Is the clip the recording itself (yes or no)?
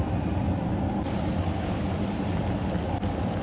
yes